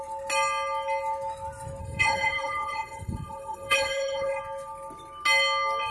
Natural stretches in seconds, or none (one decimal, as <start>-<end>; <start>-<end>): 0.0-1.8; 4.4-5.9